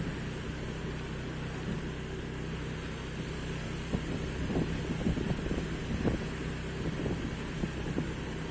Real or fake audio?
real